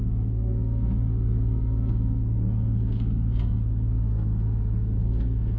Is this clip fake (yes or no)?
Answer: yes